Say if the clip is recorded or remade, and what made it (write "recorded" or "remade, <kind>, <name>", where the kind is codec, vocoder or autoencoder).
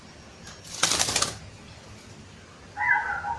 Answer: recorded